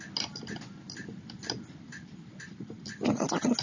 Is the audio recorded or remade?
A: recorded